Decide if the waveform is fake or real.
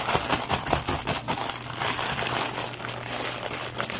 real